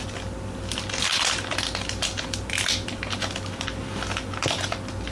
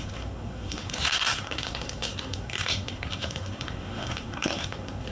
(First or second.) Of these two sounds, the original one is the first